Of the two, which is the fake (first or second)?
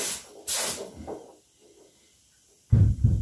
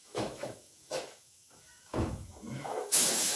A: second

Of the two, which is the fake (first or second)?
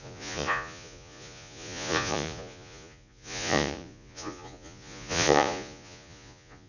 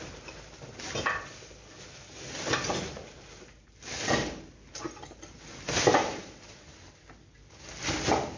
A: first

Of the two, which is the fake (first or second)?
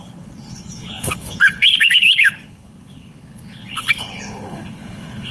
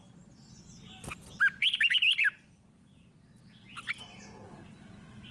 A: first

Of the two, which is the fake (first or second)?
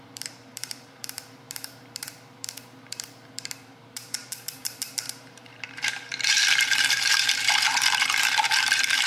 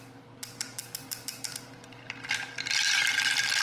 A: first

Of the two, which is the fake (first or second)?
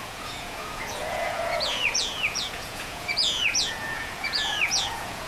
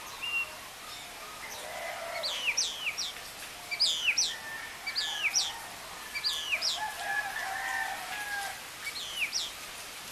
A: first